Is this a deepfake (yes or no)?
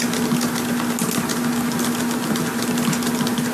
no